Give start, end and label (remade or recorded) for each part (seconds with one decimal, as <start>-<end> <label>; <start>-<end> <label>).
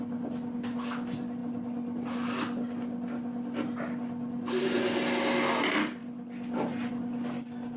0.0-7.8 recorded